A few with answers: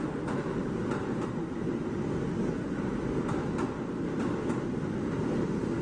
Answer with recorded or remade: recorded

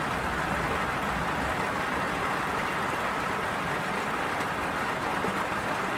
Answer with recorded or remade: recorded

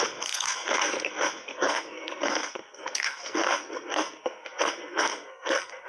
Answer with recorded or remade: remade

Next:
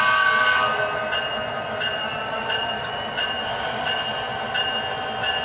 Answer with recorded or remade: recorded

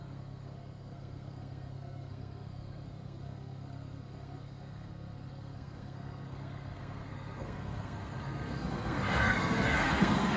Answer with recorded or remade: remade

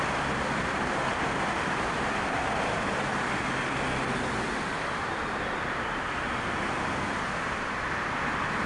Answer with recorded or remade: recorded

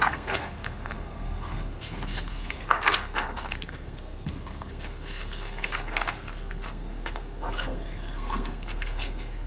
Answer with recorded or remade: remade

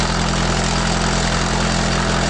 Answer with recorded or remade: recorded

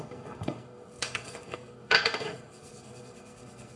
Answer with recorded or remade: remade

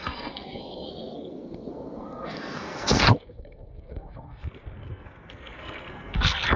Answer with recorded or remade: remade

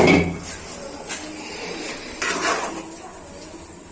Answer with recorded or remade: recorded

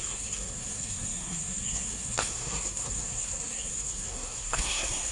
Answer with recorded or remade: remade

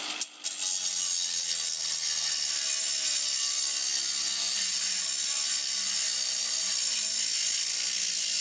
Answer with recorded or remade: recorded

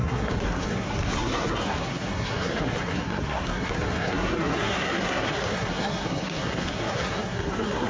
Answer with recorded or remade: remade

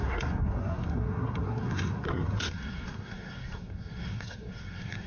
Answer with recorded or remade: remade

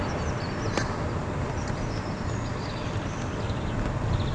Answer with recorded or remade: recorded